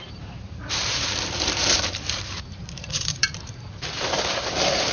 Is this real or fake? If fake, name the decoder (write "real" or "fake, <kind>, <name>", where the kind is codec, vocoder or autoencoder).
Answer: fake, vocoder, BigVGAN v2